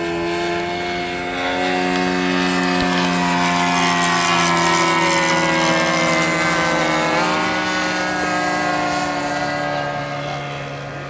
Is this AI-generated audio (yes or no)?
no